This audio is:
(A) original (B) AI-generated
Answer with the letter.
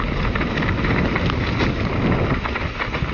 A